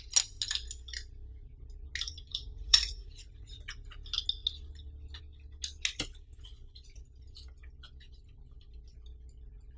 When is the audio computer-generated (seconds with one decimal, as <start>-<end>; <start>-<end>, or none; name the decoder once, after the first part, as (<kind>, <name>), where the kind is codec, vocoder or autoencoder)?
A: 2.3-3.6 (vocoder, Vocos)